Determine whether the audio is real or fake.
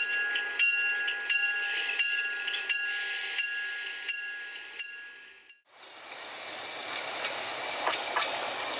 real